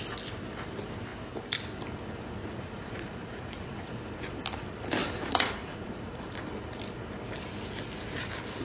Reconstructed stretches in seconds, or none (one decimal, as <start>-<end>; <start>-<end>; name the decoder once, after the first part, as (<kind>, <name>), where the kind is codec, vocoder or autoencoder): 2.4-3.9 (vocoder, Vocos); 5.0-6.4